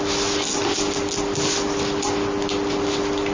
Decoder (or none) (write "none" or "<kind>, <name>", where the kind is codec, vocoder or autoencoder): none